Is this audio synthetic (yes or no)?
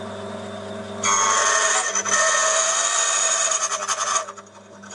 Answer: no